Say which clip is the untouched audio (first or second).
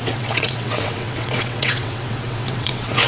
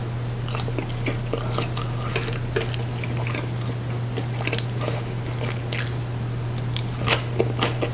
second